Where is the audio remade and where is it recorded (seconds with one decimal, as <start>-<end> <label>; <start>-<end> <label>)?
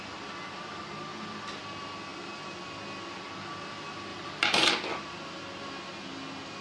0.0-4.1 recorded; 4.1-4.7 remade; 4.7-6.6 recorded